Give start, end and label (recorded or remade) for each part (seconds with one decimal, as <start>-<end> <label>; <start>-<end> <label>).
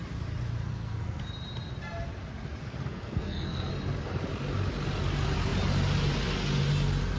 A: 0.0-0.7 recorded; 0.7-1.2 remade; 1.2-2.6 recorded; 2.6-3.7 remade; 3.7-7.2 recorded